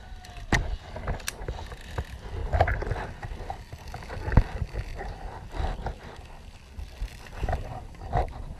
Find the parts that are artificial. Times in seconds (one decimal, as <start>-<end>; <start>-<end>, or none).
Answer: 7.1-7.8